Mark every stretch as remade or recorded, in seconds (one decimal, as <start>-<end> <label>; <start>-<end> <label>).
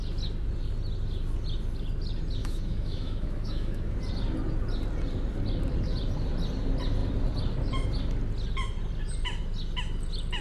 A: 0.0-2.4 recorded; 2.4-4.0 remade; 4.0-10.4 recorded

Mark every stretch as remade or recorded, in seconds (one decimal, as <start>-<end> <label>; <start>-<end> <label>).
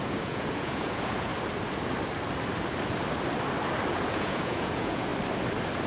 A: 0.0-1.3 remade; 1.3-3.9 recorded; 3.9-5.1 remade; 5.1-5.9 recorded